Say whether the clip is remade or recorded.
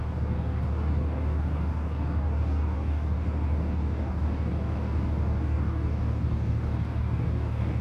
remade